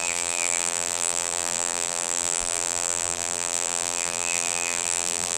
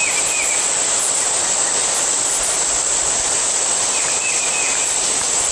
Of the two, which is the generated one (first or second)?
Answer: first